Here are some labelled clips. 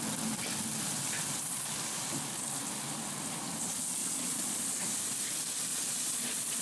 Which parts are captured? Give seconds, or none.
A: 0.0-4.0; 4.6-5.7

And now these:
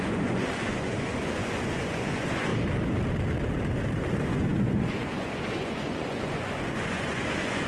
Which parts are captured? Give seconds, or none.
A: 2.5-4.1

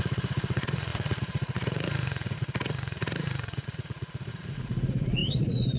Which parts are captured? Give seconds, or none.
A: none

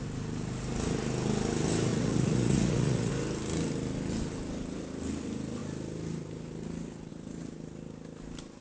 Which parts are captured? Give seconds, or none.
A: 0.0-1.9; 3.1-8.6

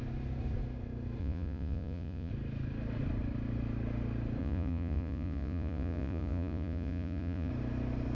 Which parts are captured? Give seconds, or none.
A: 0.0-1.2; 2.3-4.4; 7.5-8.1

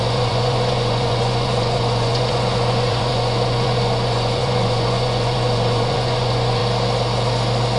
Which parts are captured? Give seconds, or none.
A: 6.6-7.8